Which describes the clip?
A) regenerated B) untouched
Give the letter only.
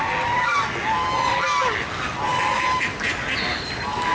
B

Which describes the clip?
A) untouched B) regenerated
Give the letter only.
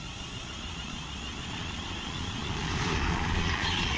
B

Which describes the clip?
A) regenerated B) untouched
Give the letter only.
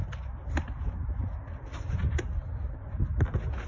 B